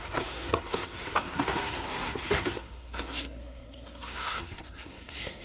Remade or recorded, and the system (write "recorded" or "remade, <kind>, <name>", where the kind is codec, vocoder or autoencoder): remade, codec, SNAC